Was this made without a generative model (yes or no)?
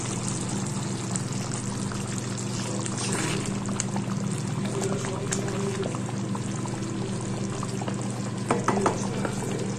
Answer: yes